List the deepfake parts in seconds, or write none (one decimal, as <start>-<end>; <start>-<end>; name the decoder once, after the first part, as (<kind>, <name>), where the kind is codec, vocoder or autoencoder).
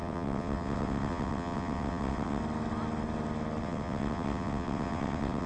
0.0-2.4 (vocoder, WaveNeXt); 3.6-5.5